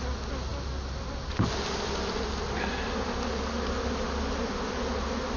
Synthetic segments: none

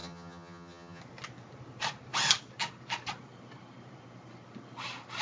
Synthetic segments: 0.0-1.0 (vocoder, HiFi-GAN)

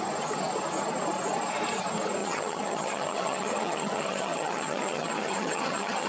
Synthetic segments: 2.2-6.1 (vocoder, HiFi-GAN)

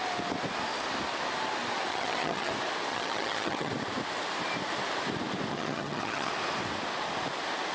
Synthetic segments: 1.9-2.5 (vocoder, HiFi-GAN); 2.9-3.7; 5.5-6.3

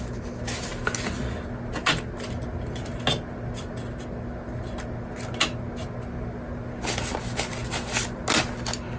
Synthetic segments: none

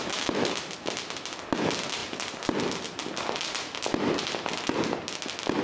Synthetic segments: 0.0-0.7 (autoencoder, DAC-VAE)

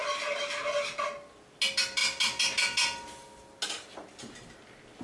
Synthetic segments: none

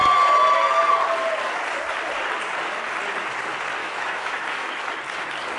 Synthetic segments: 3.8-4.8 (autoencoder, DAC-VAE)